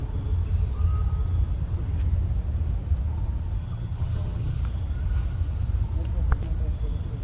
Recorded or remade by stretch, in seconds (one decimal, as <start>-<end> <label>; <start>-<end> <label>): 0.0-3.6 recorded; 3.6-4.6 remade; 4.6-7.2 recorded

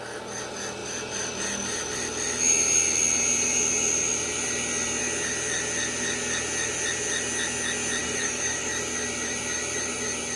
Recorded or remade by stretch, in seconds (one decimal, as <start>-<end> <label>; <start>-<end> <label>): 0.0-8.0 recorded; 8.0-8.7 remade; 8.7-10.4 recorded

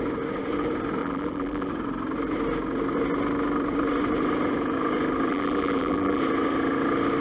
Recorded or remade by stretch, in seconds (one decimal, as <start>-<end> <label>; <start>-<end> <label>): 0.0-1.0 recorded; 1.0-1.7 remade; 1.7-5.3 recorded; 5.3-6.2 remade; 6.2-7.2 recorded

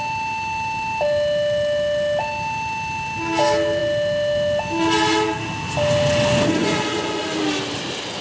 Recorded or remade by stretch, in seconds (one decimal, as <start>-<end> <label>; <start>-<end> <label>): 0.0-6.6 recorded; 6.6-7.2 remade; 7.2-8.2 recorded